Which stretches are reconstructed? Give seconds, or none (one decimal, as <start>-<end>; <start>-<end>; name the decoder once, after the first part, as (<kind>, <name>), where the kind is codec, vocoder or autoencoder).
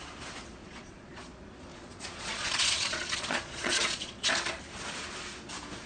0.6-1.2 (vocoder, Vocos); 1.7-4.3